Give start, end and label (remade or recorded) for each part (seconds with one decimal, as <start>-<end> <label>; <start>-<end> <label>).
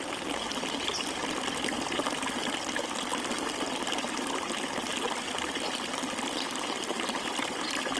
0.0-8.0 recorded